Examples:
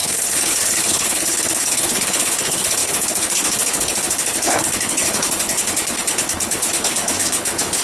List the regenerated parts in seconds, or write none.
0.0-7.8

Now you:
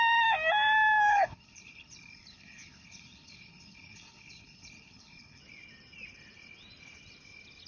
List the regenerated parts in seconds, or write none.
1.1-5.4

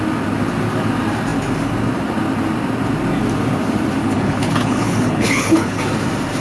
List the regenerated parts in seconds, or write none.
4.0-5.8

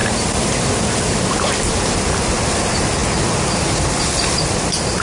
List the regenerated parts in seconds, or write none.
none